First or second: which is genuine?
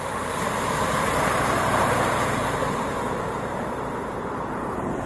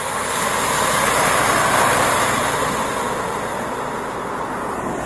second